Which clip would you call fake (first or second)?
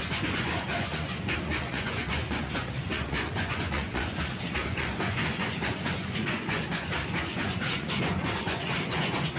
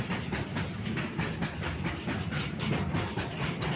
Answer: first